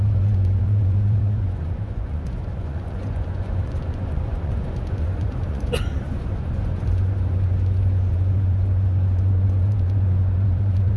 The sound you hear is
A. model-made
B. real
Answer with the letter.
A